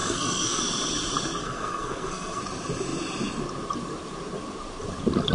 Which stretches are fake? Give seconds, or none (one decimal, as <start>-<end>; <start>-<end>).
0.0-0.6; 1.4-2.4